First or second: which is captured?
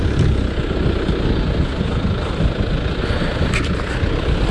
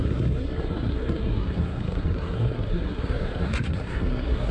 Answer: first